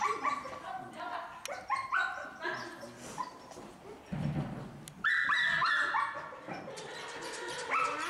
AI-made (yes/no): no